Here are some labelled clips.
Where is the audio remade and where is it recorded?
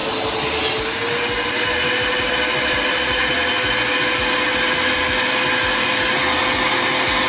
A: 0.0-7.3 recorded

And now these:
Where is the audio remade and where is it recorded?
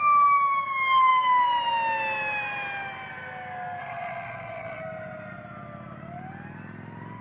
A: 0.0-3.8 recorded; 3.8-4.8 remade; 4.8-7.2 recorded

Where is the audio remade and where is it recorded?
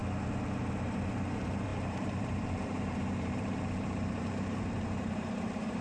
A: 0.0-0.7 recorded; 0.7-5.8 remade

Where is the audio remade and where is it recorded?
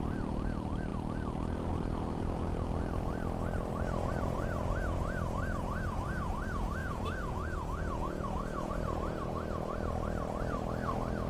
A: 0.0-6.8 recorded; 6.8-8.7 remade; 8.7-11.3 recorded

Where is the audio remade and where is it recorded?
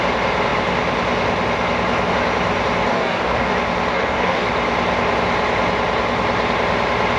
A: 0.0-2.9 recorded; 2.9-3.5 remade; 3.5-3.9 recorded; 3.9-4.5 remade; 4.5-7.2 recorded